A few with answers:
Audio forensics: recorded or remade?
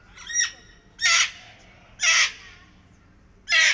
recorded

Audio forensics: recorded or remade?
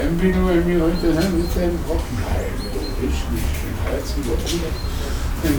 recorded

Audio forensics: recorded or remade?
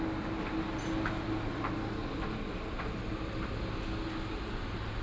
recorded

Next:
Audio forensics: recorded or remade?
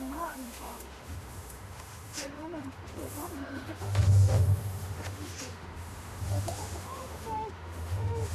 remade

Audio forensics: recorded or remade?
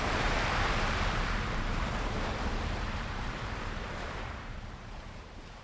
remade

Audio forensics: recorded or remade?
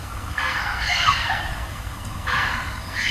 remade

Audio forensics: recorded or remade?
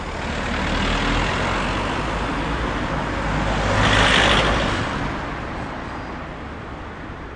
recorded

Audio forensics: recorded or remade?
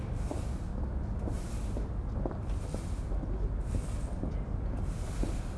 recorded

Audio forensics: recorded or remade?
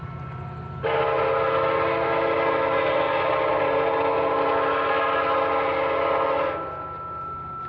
recorded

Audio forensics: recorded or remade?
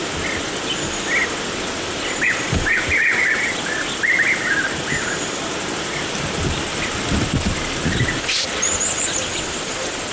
recorded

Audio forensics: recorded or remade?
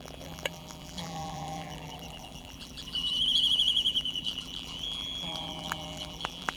remade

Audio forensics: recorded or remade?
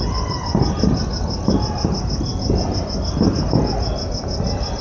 recorded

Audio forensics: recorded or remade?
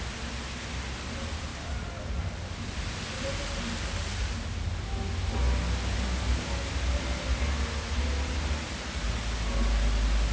recorded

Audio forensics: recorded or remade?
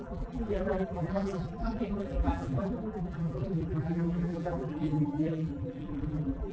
remade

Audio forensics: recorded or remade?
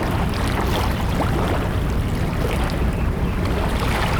recorded